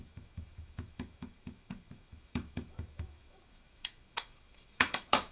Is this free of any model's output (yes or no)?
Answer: no